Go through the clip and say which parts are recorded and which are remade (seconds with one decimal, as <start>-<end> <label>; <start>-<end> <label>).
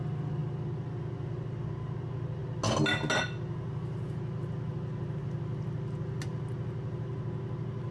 0.0-7.9 recorded